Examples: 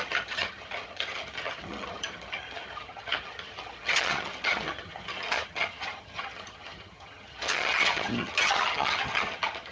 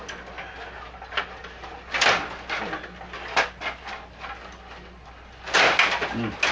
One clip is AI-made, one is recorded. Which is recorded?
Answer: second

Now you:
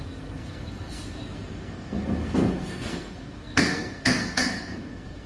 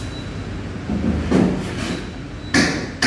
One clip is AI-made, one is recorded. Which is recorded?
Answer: second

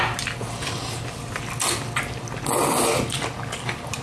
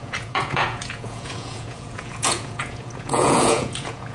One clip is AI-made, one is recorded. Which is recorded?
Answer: first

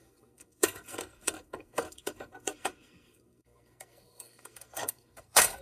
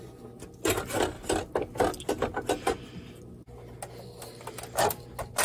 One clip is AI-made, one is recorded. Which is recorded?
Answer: second